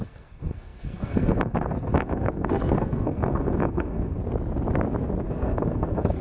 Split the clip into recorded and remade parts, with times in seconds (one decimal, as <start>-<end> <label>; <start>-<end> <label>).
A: 0.0-4.2 remade; 4.2-5.2 recorded; 5.2-6.2 remade

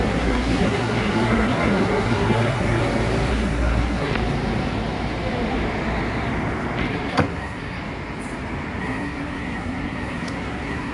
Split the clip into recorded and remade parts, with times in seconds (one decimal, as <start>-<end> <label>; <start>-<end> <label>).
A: 0.0-2.8 remade; 2.8-3.3 recorded; 3.3-4.1 remade; 4.1-6.9 recorded; 6.9-7.8 remade; 7.8-8.8 recorded; 8.8-10.9 remade

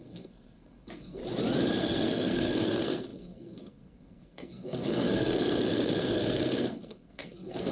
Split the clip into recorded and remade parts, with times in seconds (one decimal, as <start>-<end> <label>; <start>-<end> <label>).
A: 0.0-1.2 remade; 1.2-1.8 recorded; 1.8-7.7 remade

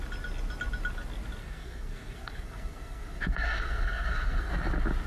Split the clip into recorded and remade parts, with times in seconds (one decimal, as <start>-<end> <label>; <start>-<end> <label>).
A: 0.0-1.4 recorded; 1.4-4.5 remade; 4.5-5.1 recorded